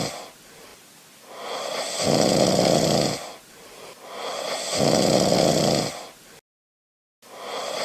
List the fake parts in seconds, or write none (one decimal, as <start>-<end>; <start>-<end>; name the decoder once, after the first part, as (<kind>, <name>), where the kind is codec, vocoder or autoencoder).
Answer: none